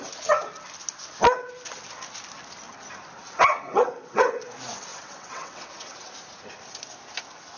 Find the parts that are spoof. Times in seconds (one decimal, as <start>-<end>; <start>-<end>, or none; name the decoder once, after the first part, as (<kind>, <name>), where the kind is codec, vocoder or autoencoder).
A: 3.2-4.4 (vocoder, WaveNeXt); 4.9-6.1